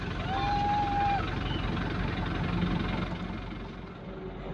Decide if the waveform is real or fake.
real